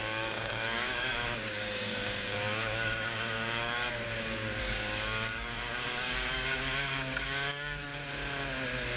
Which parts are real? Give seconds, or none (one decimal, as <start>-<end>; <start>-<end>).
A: 7.9-9.0